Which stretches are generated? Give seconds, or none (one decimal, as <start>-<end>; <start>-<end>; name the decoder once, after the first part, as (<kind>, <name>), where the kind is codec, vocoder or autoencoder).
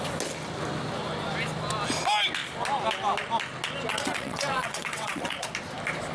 3.9-5.5 (vocoder, WaveNeXt)